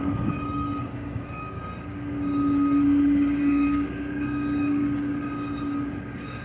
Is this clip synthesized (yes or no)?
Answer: yes